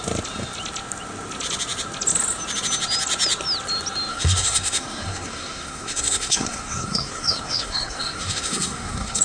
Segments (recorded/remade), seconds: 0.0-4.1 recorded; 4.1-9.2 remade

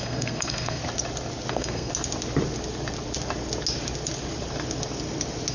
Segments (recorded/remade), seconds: 0.0-0.8 remade; 0.8-1.5 recorded; 1.5-1.9 remade; 1.9-5.5 recorded

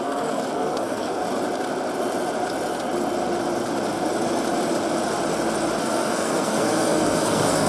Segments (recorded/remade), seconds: 0.0-1.2 remade; 1.2-5.8 recorded; 5.8-7.7 remade